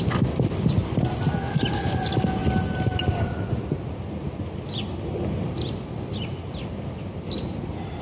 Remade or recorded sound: recorded